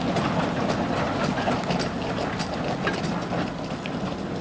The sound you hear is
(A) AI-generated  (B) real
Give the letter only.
B